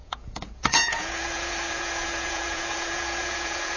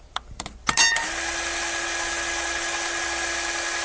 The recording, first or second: second